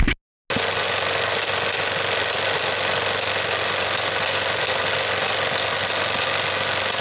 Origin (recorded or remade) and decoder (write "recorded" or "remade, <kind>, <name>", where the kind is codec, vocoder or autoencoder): recorded